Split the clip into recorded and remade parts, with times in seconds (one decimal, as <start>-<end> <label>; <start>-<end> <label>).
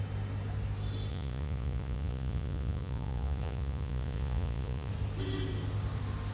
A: 0.0-1.1 recorded; 1.1-4.9 remade; 4.9-6.3 recorded